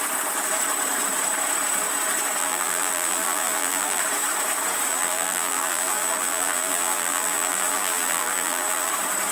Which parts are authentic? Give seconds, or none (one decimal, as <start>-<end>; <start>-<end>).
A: 0.0-2.4; 4.0-4.9; 8.9-9.3

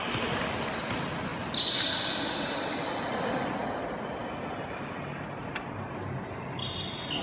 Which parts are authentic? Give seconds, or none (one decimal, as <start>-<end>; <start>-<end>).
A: 0.0-7.2

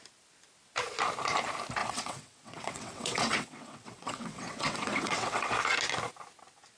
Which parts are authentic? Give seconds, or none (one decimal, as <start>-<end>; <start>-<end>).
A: 0.0-1.8; 5.5-6.8

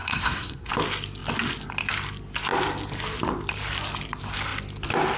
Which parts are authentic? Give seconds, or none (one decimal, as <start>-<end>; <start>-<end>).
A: 0.7-5.2

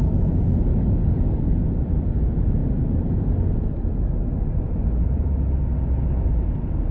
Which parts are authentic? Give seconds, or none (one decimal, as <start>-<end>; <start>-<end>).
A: 0.0-0.7; 1.5-6.9